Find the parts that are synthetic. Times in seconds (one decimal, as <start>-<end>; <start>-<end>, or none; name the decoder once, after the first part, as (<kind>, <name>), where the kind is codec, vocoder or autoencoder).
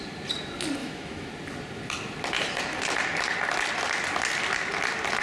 0.8-1.3 (autoencoder, DAC-VAE)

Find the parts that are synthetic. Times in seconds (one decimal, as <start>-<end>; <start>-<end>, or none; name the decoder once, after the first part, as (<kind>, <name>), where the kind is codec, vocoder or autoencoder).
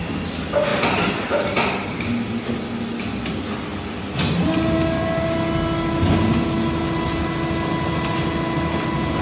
none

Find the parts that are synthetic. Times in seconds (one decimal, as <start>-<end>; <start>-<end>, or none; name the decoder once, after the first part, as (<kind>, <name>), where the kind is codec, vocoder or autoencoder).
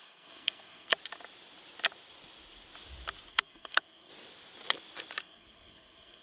0.0-0.9 (codec, SNAC); 3.3-4.1; 5.2-6.2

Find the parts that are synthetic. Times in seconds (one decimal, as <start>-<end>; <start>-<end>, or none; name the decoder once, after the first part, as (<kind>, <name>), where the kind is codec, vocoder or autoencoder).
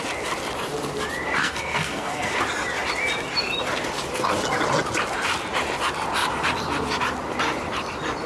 1.4-2.4 (codec, SNAC)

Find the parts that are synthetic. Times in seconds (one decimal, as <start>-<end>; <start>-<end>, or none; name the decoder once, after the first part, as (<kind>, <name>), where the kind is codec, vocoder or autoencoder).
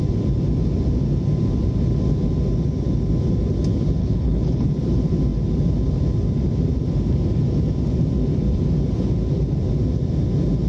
4.0-4.7 (codec, HILCodec)